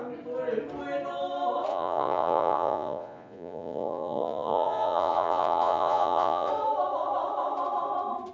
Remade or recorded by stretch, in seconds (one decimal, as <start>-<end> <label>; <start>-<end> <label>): 0.0-1.7 recorded; 1.7-6.5 remade; 6.5-8.3 recorded